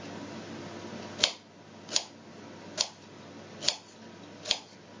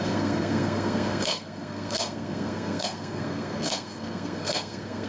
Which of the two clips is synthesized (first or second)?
second